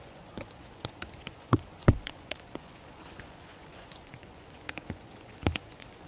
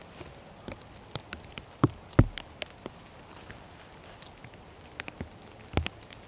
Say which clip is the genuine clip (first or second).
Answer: second